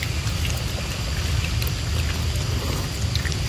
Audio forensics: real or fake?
real